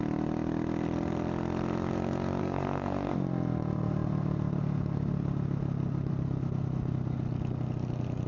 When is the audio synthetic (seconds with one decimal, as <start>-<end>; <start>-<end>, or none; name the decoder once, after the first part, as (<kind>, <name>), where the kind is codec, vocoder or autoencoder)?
2.4-3.1 (codec, SNAC)